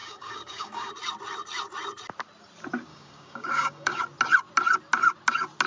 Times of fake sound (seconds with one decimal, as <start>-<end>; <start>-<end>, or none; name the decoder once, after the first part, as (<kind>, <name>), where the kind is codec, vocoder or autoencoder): 0.0-0.9 (codec, DAC); 2.9-4.0